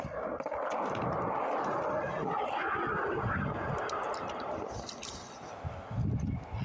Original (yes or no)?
yes